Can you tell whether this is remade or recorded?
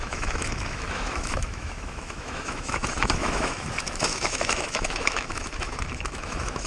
remade